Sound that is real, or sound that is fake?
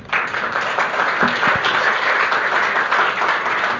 real